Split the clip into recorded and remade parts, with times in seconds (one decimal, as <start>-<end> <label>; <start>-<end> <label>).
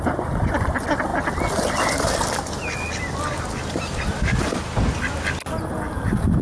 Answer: 0.0-6.4 recorded